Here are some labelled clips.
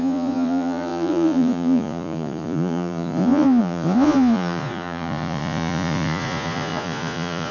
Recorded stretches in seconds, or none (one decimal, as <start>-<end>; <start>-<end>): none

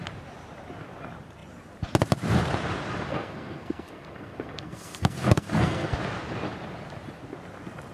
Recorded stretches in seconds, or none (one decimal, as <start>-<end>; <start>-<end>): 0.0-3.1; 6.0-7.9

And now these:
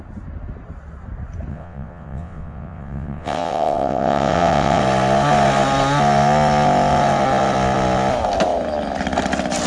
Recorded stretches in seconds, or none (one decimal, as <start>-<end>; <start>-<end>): 0.0-1.5; 4.8-9.7

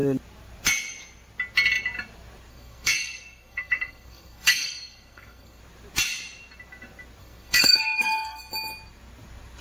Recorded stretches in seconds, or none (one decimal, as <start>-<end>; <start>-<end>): 0.0-2.5; 5.6-7.2; 8.5-9.6

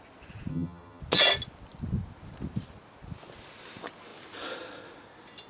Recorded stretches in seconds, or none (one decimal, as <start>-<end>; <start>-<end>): 0.0-0.5; 1.0-5.5